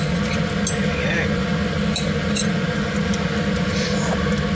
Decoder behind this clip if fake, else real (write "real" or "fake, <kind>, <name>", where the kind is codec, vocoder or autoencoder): real